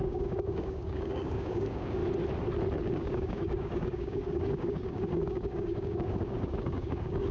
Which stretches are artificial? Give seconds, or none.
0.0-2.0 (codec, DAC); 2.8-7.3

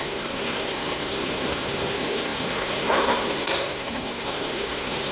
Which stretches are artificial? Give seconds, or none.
0.0-5.1 (codec, SNAC)

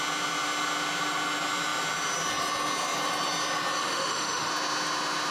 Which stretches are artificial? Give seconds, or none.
3.8-4.5 (autoencoder, DAC-VAE)

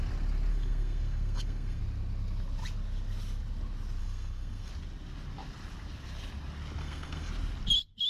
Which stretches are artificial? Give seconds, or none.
0.5-1.8 (codec, SNAC); 4.0-4.7; 6.8-7.3

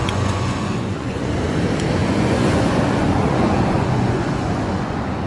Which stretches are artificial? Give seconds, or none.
0.0-1.3 (vocoder, Vocos); 2.0-5.3